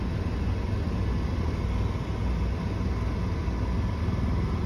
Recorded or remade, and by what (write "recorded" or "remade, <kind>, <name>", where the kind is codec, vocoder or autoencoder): recorded